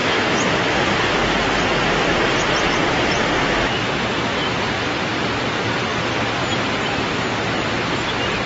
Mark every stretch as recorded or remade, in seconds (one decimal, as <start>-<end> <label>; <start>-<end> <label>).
0.0-1.2 remade; 1.2-2.0 recorded; 2.0-5.9 remade; 5.9-6.4 recorded; 6.4-8.5 remade